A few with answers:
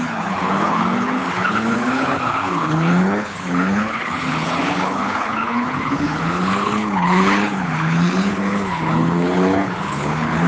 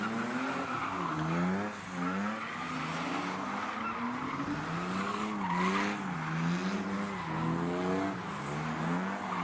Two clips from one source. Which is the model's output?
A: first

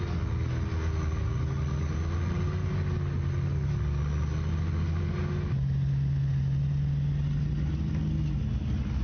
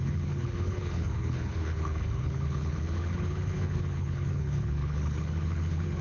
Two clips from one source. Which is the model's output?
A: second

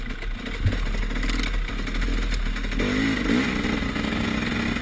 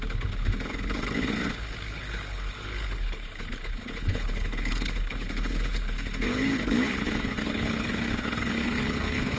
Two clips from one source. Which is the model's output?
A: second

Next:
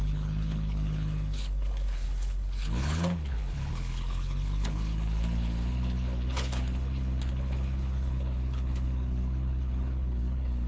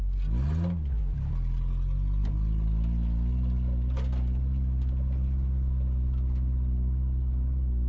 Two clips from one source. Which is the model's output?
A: first